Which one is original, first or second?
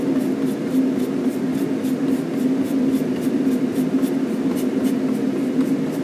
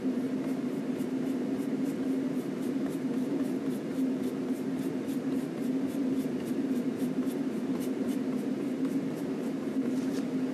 first